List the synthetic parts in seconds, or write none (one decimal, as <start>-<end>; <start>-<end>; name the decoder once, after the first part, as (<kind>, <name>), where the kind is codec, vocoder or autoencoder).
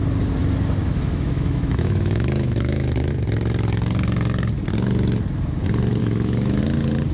0.8-3.1 (autoencoder, DAC-VAE); 6.0-6.6